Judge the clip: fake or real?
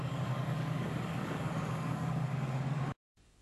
fake